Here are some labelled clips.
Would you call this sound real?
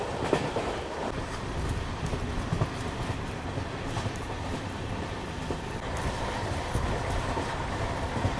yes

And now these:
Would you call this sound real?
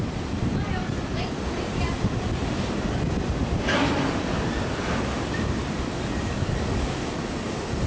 yes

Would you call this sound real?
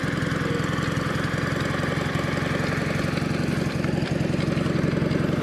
yes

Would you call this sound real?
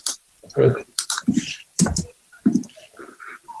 no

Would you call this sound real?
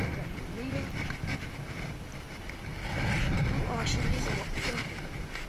yes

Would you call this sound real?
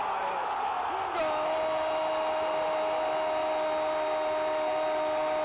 yes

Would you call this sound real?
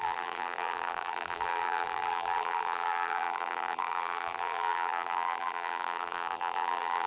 no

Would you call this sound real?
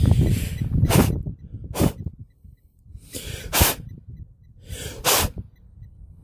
no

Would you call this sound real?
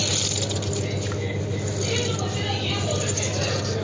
yes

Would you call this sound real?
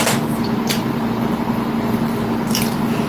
yes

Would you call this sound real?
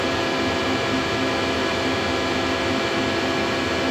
yes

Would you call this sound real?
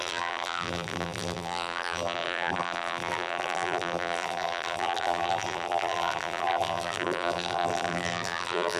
no